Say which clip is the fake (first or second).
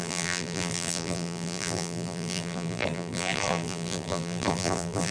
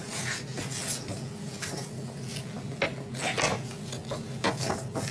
first